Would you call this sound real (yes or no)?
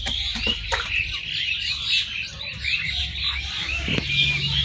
yes